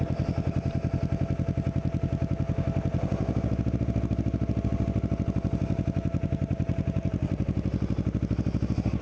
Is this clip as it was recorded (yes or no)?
yes